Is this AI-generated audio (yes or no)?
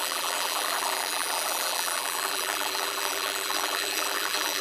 yes